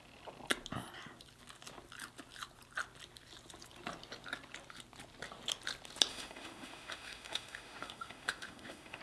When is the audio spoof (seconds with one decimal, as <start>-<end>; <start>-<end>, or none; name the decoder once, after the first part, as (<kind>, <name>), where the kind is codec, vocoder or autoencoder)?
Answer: 6.1-9.0 (autoencoder, DAC-VAE)

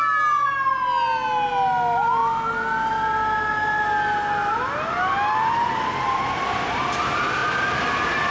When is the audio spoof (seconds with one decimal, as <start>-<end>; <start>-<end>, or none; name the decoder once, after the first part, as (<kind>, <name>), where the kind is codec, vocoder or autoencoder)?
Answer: none

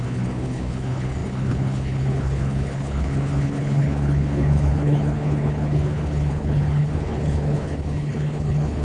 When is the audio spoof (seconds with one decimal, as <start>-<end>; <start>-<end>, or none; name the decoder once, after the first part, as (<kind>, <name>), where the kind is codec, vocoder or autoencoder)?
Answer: 0.0-8.8 (codec, HILCodec)

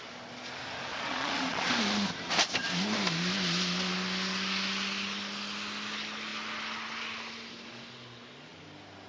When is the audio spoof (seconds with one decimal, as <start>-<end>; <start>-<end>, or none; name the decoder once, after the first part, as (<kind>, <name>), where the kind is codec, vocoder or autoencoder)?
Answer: 0.9-1.7 (vocoder, Vocos)

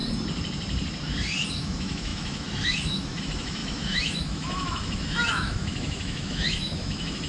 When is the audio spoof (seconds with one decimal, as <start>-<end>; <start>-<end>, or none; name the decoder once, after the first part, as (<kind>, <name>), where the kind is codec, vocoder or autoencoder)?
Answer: 1.6-7.3 (autoencoder, DAC-VAE)